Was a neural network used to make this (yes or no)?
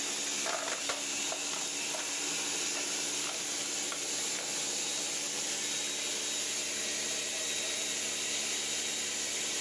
no